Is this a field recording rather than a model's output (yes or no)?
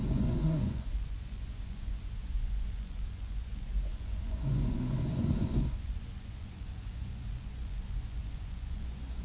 no